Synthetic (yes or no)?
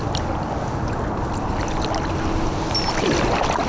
no